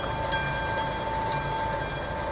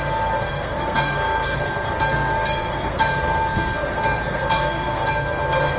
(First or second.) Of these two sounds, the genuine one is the first